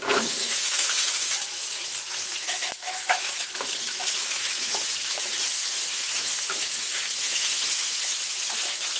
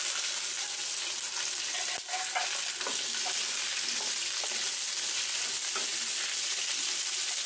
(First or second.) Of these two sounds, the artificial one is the first